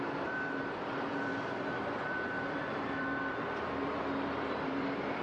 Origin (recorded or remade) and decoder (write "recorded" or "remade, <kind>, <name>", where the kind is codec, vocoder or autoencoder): remade, vocoder, BigVGAN v2